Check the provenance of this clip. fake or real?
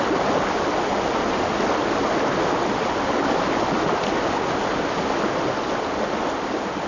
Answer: real